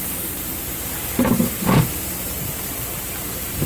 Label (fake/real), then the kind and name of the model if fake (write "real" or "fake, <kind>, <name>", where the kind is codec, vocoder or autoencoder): fake, vocoder, BigVGAN v2